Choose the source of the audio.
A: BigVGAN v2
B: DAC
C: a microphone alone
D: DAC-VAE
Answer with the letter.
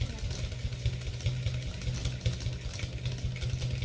C